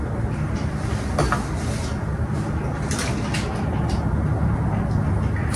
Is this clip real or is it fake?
real